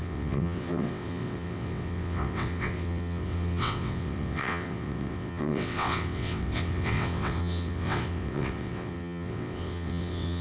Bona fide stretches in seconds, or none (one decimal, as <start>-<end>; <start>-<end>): none